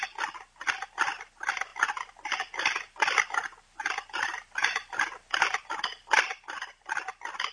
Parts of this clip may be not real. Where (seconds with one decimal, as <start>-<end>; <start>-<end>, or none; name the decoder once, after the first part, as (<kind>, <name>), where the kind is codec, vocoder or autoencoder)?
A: none